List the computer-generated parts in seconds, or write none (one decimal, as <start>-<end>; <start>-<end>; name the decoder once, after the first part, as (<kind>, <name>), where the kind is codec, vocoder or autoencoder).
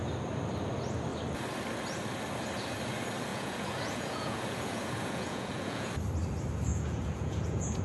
3.3-5.9 (vocoder, Vocos); 6.7-7.8